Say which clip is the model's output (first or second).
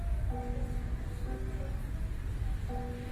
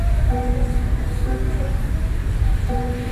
second